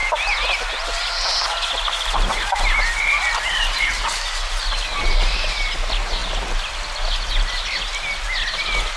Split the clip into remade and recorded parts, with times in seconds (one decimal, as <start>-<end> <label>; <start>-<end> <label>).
0.0-9.0 recorded